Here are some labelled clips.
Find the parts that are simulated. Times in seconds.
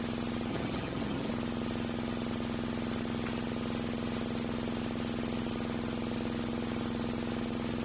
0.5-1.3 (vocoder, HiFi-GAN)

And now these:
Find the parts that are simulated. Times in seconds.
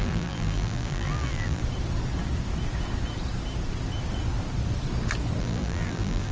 0.0-1.6 (vocoder, BigVGAN v2); 5.4-6.3